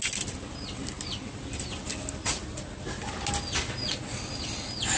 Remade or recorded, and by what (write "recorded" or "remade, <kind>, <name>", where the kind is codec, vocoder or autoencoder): recorded